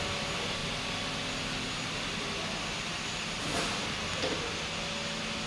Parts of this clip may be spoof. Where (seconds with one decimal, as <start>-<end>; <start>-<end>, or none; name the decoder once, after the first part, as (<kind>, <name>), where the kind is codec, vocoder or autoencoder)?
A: none